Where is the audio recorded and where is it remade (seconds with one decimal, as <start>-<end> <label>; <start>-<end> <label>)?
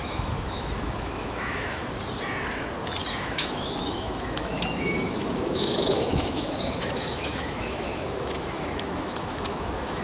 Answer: 0.0-1.8 remade; 1.8-3.1 recorded; 3.1-10.0 remade